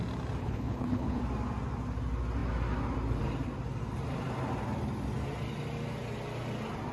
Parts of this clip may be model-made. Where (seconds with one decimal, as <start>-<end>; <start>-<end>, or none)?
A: 0.4-1.2